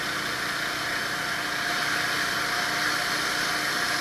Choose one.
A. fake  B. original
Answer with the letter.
B